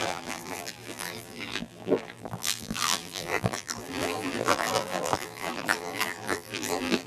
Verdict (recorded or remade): remade